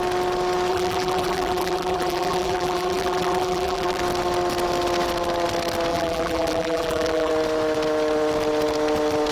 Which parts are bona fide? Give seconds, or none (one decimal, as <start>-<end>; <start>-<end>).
0.0-0.7; 4.0-5.9; 7.3-9.3